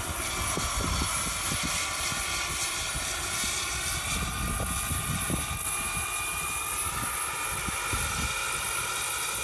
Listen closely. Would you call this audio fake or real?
real